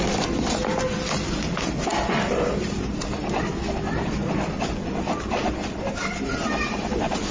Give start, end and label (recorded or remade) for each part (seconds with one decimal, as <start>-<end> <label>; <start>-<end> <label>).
0.0-7.3 recorded